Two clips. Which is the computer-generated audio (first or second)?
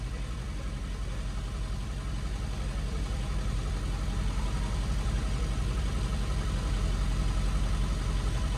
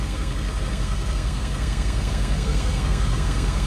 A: second